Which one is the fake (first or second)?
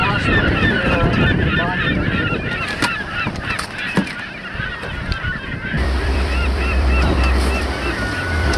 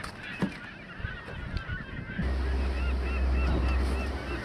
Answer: first